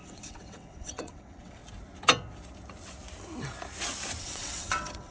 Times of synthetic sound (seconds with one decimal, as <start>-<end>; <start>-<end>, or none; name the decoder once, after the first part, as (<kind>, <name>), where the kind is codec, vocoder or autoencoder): 0.0-1.6 (vocoder, WaveNeXt); 4.2-5.1